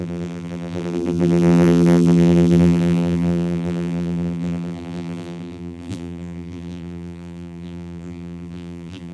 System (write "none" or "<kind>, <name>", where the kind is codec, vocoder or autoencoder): vocoder, BigVGAN v2